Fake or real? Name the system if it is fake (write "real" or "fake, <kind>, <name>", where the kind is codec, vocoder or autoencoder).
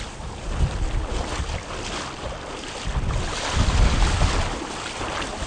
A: real